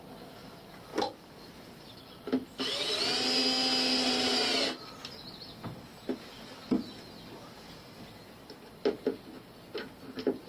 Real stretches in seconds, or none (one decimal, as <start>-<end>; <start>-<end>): 0.0-10.5

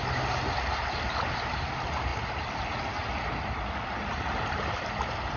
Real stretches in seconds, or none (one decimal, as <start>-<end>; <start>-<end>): 0.0-5.4

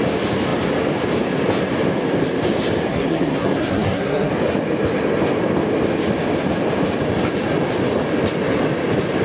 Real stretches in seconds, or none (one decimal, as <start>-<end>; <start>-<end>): 0.0-2.9; 4.3-9.2

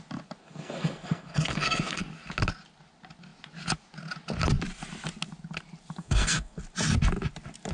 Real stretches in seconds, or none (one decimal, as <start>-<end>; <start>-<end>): 0.0-0.4; 2.0-6.0; 6.6-7.7

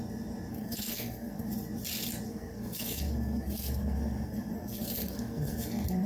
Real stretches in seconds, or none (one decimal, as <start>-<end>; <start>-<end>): 0.0-0.5; 1.5-2.3

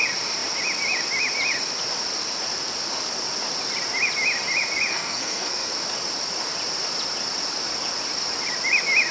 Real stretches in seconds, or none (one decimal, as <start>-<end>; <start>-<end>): 0.0-4.9; 5.7-9.1

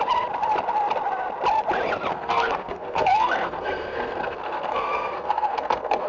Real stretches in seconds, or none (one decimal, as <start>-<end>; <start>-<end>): 0.0-2.1

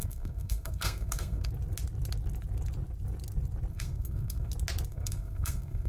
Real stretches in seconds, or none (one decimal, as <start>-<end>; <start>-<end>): 1.5-3.7; 4.5-4.9